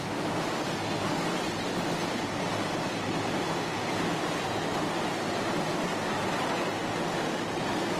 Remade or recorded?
recorded